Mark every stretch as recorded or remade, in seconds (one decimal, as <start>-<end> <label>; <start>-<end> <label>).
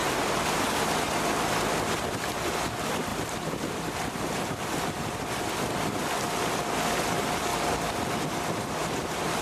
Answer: 0.0-1.2 remade; 1.2-3.1 recorded; 3.1-4.4 remade; 4.4-8.8 recorded; 8.8-9.4 remade